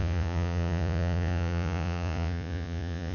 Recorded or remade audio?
remade